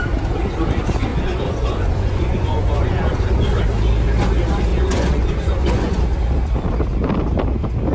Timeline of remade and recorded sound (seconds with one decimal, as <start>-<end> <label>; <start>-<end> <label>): 0.0-1.1 recorded; 1.1-3.6 remade; 3.6-4.7 recorded; 4.7-6.0 remade; 6.0-7.9 recorded